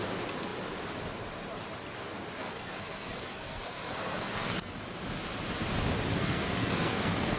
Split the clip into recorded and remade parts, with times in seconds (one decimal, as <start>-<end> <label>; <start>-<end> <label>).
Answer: 0.0-2.4 recorded; 2.4-4.7 remade; 4.7-6.1 recorded; 6.1-7.4 remade